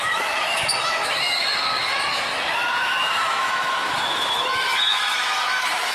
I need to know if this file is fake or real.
fake